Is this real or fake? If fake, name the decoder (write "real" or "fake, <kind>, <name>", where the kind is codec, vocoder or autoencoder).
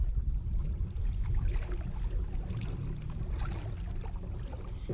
real